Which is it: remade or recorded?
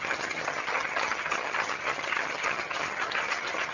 remade